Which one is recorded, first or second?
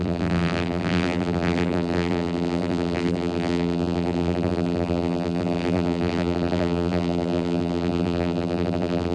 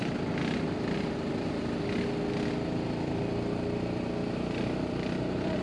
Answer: second